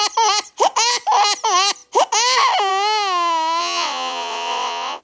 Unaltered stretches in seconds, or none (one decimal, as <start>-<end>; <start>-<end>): 0.0-3.6